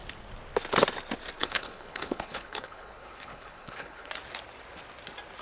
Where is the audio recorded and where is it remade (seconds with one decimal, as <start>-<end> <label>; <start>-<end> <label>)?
0.0-1.4 recorded; 1.4-4.1 remade; 4.1-5.4 recorded